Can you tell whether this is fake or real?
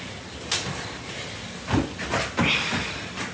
real